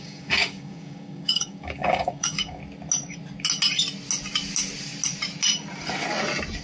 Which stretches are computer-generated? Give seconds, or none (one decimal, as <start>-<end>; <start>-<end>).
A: 0.0-2.6